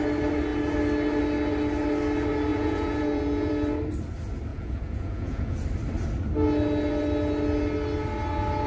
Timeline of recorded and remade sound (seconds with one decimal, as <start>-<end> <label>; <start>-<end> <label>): 0.0-2.5 recorded; 2.5-3.5 remade; 3.5-4.5 recorded; 4.5-5.6 remade; 5.6-8.7 recorded